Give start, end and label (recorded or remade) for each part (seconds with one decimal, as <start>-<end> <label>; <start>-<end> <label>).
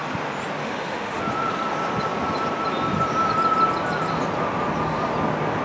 0.0-0.6 recorded; 0.6-1.2 remade; 1.2-5.6 recorded